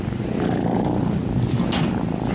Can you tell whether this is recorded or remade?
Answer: recorded